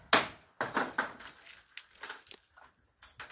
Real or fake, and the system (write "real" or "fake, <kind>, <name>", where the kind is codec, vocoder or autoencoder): real